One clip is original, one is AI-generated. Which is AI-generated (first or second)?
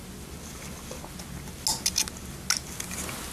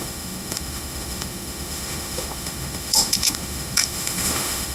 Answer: second